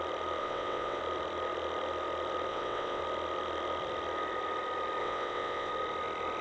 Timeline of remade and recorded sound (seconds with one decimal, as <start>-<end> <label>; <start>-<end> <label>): 0.0-0.4 recorded; 0.4-1.0 remade; 1.0-2.5 recorded; 2.5-3.0 remade; 3.0-5.0 recorded; 5.0-5.7 remade; 5.7-6.4 recorded